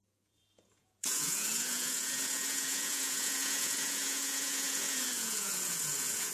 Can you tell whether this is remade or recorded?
remade